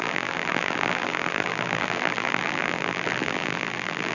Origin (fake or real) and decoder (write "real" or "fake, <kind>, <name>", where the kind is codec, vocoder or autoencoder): fake, vocoder, BigVGAN v2